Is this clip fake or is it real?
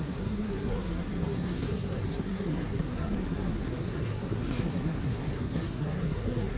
fake